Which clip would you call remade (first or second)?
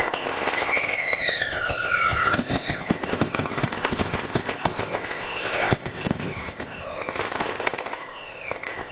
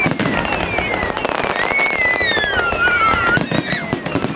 first